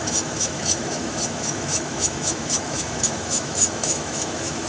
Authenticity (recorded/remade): remade